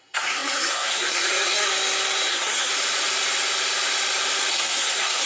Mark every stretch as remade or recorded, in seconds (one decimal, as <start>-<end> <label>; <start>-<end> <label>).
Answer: 0.0-1.7 remade; 1.7-2.3 recorded; 2.3-2.7 remade; 2.7-4.5 recorded; 4.5-5.3 remade